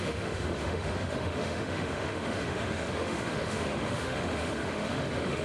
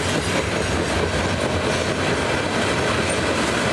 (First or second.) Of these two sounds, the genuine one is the second